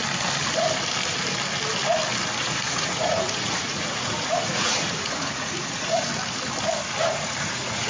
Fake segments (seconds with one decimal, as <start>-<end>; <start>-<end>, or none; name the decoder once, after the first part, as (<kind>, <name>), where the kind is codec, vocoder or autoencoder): 2.4-6.1 (vocoder, Vocos); 7.0-7.9